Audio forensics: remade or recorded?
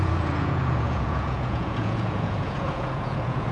remade